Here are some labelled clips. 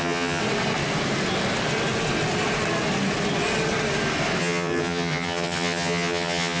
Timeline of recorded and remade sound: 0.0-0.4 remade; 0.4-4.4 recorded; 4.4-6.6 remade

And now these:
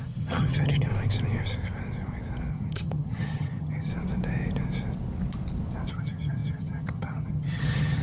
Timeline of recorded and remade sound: 0.0-0.9 remade; 0.9-2.5 recorded; 2.5-3.9 remade; 3.9-5.9 recorded; 5.9-8.0 remade